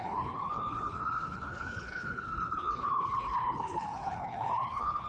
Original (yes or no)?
no